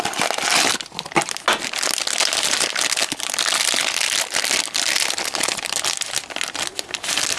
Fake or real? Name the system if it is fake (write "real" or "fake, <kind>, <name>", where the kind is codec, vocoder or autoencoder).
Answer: real